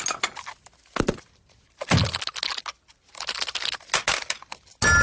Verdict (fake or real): real